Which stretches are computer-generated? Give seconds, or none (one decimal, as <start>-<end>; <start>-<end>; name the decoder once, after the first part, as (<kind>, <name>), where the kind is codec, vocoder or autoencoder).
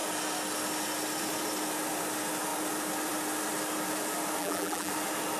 4.4-4.9 (vocoder, BigVGAN v2)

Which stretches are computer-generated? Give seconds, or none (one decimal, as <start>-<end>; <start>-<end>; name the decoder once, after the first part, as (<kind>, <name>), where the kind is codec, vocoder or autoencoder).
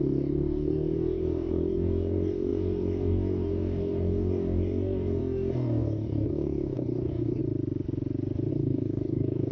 0.0-7.4 (codec, DAC); 8.5-9.5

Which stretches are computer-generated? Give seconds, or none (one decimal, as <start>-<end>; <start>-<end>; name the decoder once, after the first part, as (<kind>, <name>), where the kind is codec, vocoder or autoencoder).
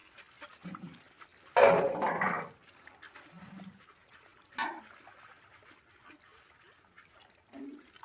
none